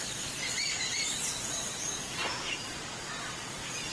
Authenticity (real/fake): fake